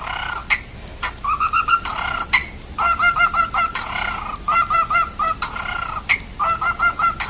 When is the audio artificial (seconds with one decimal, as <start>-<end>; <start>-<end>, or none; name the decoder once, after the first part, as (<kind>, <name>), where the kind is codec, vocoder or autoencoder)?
none